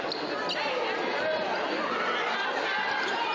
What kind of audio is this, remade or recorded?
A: recorded